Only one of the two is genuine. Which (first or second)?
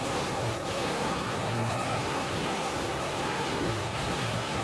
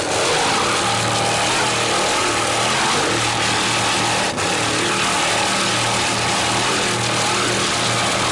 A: second